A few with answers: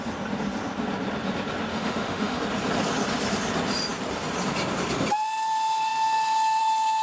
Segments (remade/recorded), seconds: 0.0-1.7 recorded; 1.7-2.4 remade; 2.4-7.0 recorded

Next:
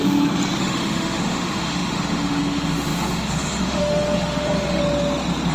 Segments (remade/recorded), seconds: 0.0-0.6 recorded; 0.6-4.8 remade; 4.8-5.5 recorded